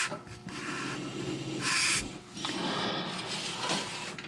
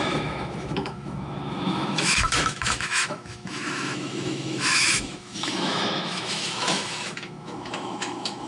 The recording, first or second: first